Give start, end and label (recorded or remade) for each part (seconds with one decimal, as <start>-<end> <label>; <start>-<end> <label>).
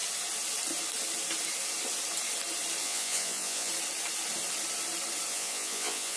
0.0-2.8 recorded; 2.8-3.7 remade; 3.7-5.3 recorded; 5.3-6.2 remade